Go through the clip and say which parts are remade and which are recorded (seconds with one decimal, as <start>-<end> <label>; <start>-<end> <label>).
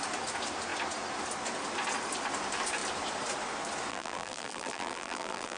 0.0-3.9 recorded; 3.9-5.6 remade